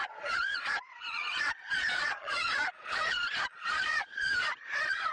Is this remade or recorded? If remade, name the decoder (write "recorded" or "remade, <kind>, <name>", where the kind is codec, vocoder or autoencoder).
remade, vocoder, Vocos